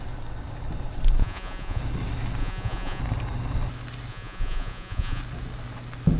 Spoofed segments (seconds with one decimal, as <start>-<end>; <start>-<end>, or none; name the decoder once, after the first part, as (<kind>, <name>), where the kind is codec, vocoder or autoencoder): 1.2-1.8 (vocoder, Vocos); 2.4-3.0; 4.1-5.2